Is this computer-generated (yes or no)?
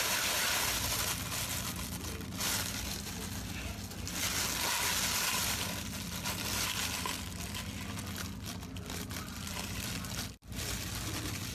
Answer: no